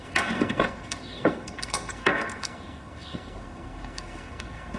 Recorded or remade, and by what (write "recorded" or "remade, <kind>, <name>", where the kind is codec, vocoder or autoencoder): remade, codec, SNAC